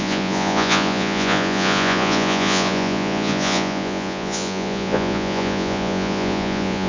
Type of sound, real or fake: fake